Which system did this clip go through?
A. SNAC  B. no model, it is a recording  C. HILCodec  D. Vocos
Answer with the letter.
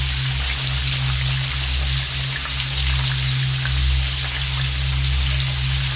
B